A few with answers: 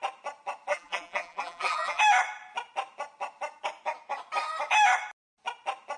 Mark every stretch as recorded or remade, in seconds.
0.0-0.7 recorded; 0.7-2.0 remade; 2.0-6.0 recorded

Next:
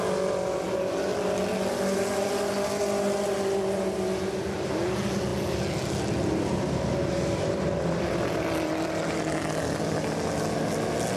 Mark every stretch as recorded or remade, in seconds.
0.0-5.3 recorded; 5.3-9.8 remade; 9.8-11.2 recorded